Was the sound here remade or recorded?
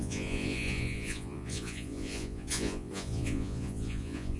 remade